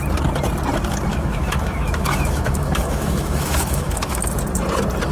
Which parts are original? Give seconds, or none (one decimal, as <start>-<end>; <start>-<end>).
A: 0.0-1.1; 4.2-5.1